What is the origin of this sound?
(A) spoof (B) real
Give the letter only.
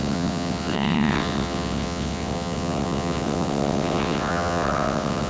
A